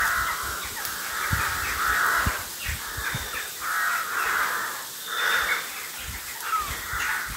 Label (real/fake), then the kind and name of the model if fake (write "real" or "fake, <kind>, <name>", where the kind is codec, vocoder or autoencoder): real